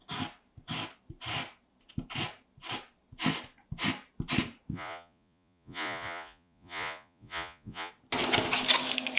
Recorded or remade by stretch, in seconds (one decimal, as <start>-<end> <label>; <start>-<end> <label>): 0.0-4.7 recorded; 4.7-7.9 remade; 7.9-9.2 recorded